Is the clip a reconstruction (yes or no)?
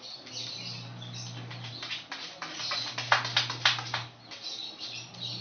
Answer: no